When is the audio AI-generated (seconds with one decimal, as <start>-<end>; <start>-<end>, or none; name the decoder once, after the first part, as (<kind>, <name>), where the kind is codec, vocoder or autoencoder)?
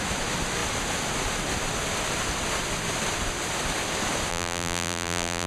4.3-5.5 (vocoder, BigVGAN v2)